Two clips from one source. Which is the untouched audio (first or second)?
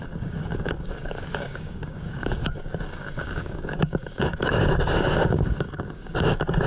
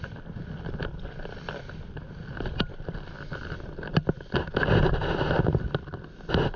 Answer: second